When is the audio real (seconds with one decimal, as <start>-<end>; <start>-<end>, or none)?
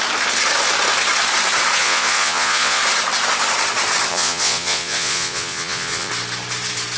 0.0-1.8; 2.8-4.1; 6.1-7.0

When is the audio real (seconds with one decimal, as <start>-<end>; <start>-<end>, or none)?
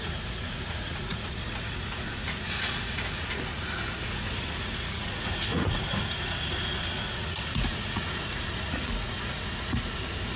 none